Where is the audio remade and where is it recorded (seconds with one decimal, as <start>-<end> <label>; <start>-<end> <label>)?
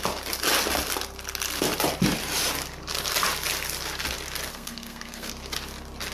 0.0-4.5 recorded; 4.5-5.3 remade; 5.3-6.1 recorded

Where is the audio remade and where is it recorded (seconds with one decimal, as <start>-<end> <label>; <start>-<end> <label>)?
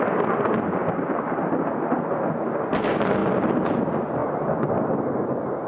0.0-0.8 recorded; 0.8-1.5 remade; 1.5-3.2 recorded; 3.2-3.8 remade; 3.8-4.2 recorded; 4.2-4.7 remade; 4.7-5.7 recorded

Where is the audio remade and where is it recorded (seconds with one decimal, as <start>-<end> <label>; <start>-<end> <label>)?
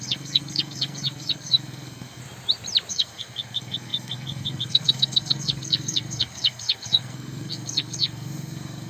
0.0-2.2 remade; 2.2-2.9 recorded; 2.9-8.9 remade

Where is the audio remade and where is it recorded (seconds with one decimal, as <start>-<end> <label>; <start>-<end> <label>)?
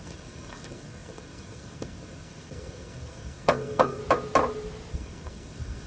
0.0-4.0 remade; 4.0-4.9 recorded; 4.9-5.9 remade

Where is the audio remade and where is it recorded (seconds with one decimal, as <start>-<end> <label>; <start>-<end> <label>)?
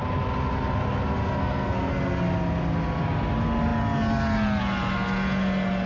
0.0-1.4 recorded; 1.4-1.9 remade; 1.9-5.9 recorded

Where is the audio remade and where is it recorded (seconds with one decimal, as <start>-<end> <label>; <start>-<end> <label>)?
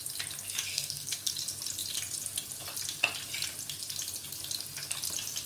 0.0-0.7 recorded; 0.7-1.3 remade; 1.3-5.5 recorded